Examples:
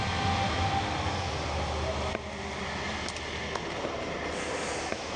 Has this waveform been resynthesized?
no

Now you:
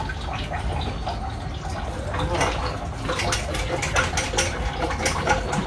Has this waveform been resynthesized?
no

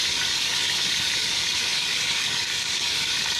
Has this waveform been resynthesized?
yes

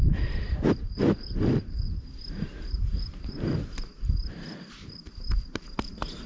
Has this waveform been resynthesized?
yes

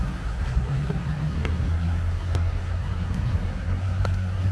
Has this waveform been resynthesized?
yes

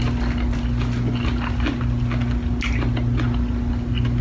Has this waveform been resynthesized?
no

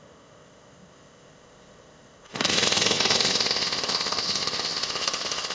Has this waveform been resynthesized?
yes